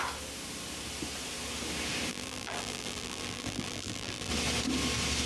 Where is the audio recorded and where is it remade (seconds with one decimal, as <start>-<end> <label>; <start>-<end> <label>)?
0.0-2.1 recorded; 2.1-4.3 remade; 4.3-5.3 recorded